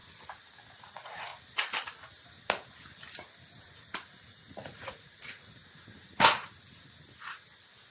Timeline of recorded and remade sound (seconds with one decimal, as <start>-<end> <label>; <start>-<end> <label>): 0.0-0.8 recorded; 0.8-1.3 remade; 1.3-3.7 recorded; 3.7-5.6 remade; 5.6-7.9 recorded